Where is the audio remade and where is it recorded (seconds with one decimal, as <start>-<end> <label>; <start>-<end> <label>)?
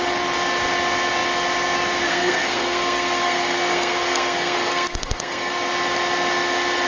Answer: 0.0-2.1 recorded; 2.1-5.5 remade; 5.5-6.9 recorded